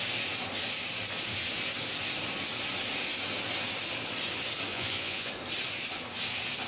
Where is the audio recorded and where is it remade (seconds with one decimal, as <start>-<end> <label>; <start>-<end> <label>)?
0.0-4.7 recorded; 4.7-5.3 remade; 5.3-6.7 recorded